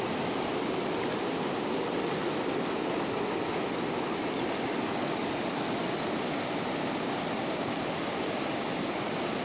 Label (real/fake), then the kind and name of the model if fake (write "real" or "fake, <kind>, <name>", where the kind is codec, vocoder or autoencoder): real